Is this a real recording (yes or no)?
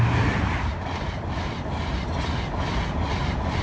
yes